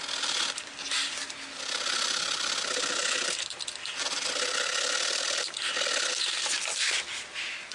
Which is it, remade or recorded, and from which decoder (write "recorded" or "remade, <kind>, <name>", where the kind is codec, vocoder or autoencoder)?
recorded